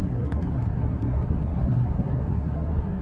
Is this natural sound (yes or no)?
no